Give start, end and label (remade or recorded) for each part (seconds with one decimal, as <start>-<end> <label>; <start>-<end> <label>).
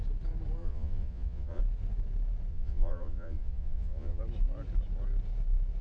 0.0-0.6 recorded; 0.6-1.6 remade; 1.6-2.5 recorded; 2.5-4.2 remade; 4.2-5.8 recorded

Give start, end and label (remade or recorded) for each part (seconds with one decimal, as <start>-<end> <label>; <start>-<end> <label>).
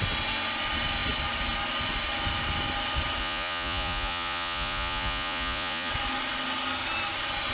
0.0-3.2 recorded; 3.2-5.9 remade; 5.9-7.5 recorded